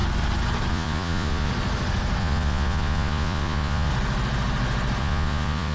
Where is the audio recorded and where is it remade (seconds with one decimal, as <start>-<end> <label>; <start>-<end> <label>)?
0.0-0.7 recorded; 0.7-1.5 remade; 1.5-2.2 recorded; 2.2-3.9 remade; 3.9-5.0 recorded; 5.0-5.7 remade